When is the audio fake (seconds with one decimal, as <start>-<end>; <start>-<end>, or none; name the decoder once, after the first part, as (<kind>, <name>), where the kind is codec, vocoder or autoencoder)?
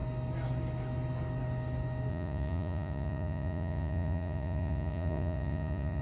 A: 2.1-6.0 (vocoder, Vocos)